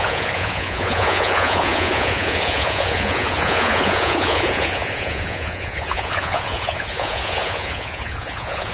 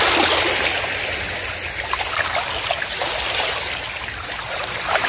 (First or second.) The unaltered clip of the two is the second